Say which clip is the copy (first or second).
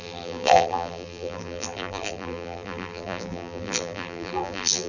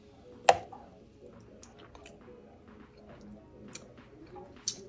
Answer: first